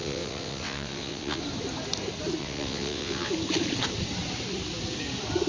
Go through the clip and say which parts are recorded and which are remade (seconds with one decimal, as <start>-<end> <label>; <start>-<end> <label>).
0.0-1.4 remade; 1.4-2.4 recorded; 2.4-3.3 remade; 3.3-5.5 recorded

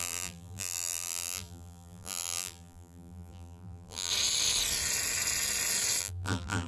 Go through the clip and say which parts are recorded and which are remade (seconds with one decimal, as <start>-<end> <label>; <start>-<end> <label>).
0.0-4.1 remade; 4.1-6.0 recorded; 6.0-6.7 remade